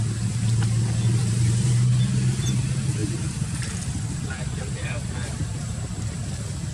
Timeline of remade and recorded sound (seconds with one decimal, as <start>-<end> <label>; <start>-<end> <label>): 0.0-1.2 recorded; 1.2-1.9 remade; 1.9-3.0 recorded; 3.0-5.9 remade; 5.9-6.7 recorded